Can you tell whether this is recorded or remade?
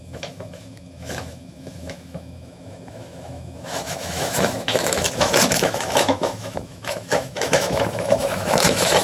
remade